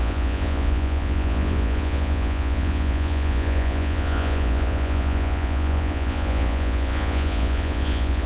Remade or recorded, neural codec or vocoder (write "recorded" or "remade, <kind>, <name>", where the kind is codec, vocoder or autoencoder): remade, vocoder, Vocos